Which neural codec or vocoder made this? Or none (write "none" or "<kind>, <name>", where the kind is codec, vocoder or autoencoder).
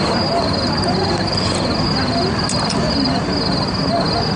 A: none